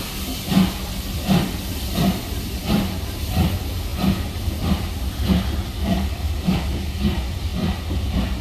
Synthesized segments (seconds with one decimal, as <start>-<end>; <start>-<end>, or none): 5.8-7.0